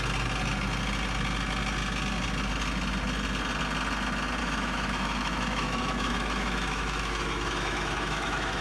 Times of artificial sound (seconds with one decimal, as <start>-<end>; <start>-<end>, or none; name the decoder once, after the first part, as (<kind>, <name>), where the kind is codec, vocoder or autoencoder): 4.4-8.6 (autoencoder, DAC-VAE)